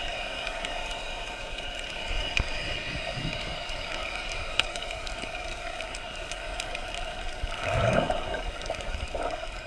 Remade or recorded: remade